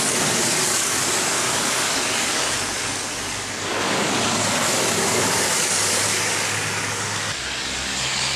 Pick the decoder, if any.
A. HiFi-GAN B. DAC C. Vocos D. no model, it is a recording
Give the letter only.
B